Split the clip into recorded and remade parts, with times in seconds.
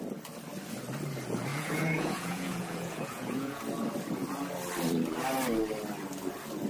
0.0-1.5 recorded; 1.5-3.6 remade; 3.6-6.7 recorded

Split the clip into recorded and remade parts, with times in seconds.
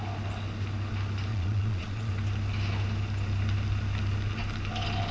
0.0-1.3 recorded; 1.3-2.1 remade; 2.1-5.1 recorded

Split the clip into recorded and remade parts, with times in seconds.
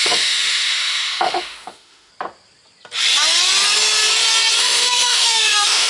0.0-2.1 remade; 2.1-4.6 recorded; 4.6-5.9 remade